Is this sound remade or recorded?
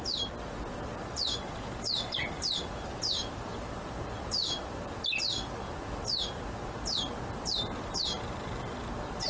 remade